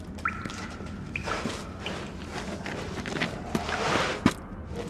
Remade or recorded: recorded